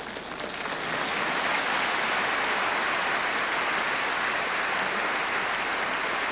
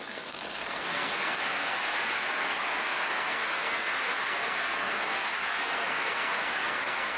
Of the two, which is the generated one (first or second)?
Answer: second